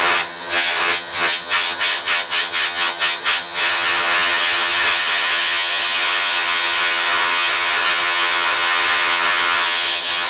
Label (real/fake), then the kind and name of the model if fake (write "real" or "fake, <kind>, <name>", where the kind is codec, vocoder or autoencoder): fake, vocoder, HiFi-GAN